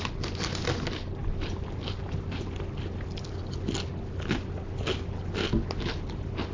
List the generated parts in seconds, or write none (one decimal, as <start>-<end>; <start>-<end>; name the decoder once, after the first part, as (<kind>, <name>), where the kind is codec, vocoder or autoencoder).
none

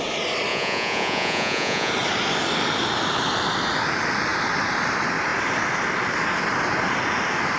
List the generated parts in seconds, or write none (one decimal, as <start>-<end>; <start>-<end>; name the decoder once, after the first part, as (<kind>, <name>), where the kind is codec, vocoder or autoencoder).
0.5-1.9 (vocoder, Vocos)